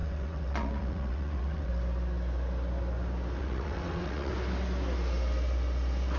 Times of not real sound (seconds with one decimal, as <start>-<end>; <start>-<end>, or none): 0.0-1.7; 3.4-4.3